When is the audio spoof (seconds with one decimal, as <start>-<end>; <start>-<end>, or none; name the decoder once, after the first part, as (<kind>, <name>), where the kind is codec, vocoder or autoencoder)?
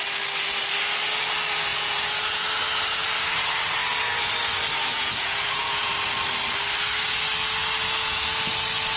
1.7-2.6 (vocoder, Vocos); 4.9-5.9; 7.8-8.4